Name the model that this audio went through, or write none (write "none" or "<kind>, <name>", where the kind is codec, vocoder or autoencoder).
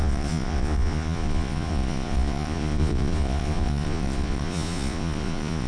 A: vocoder, Vocos